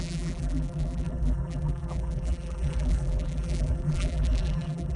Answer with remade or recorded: remade